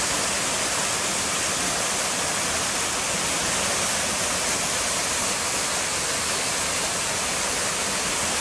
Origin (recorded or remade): recorded